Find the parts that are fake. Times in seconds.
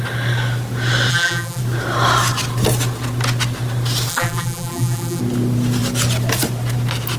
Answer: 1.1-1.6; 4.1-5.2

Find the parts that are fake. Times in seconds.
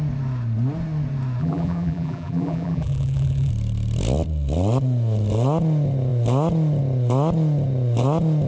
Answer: 1.4-3.5